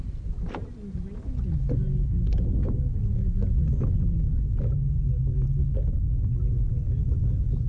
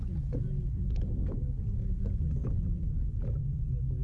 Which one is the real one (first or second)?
first